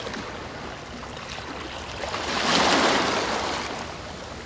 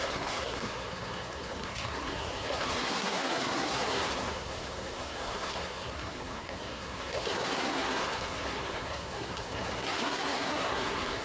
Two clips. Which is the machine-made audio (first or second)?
second